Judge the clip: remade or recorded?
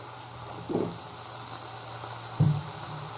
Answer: recorded